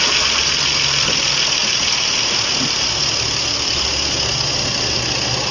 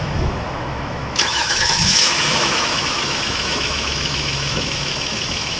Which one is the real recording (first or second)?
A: first